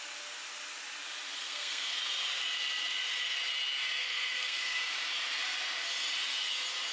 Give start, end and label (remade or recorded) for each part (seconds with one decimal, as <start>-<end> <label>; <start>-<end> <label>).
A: 0.0-1.4 recorded; 1.4-2.0 remade; 2.0-4.0 recorded; 4.0-4.8 remade; 4.8-6.9 recorded